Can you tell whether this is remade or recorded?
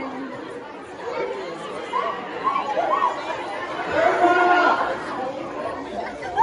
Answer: recorded